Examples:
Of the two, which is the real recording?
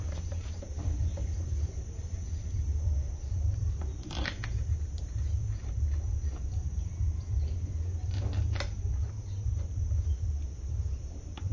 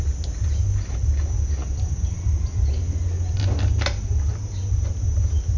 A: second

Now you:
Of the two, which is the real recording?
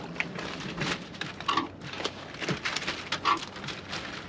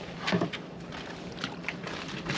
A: first